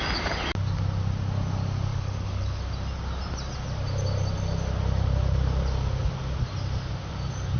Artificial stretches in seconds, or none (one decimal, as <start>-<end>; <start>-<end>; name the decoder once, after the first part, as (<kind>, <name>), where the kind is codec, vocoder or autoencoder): 1.9-2.6 (codec, HILCodec)